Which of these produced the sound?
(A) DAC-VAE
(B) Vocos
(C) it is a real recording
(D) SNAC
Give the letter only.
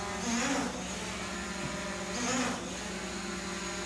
C